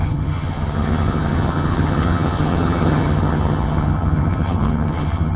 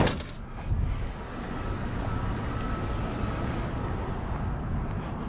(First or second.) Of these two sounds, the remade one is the first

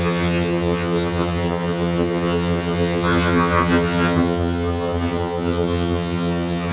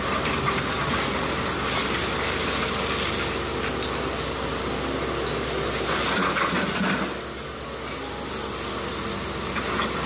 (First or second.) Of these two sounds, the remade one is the first